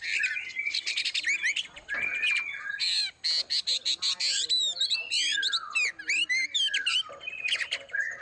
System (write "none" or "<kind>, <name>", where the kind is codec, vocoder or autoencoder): none